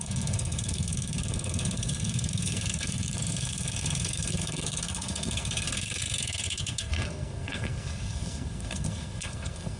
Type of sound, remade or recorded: remade